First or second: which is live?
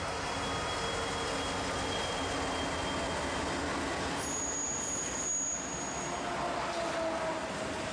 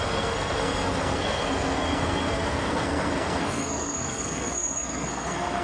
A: first